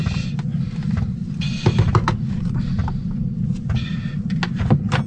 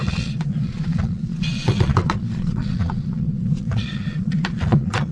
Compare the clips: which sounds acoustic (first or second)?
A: first